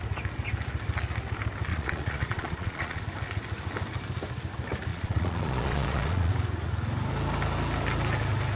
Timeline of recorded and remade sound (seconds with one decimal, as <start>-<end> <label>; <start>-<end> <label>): 0.0-1.7 recorded; 1.7-3.0 remade; 3.0-4.9 recorded; 4.9-6.3 remade; 6.3-8.6 recorded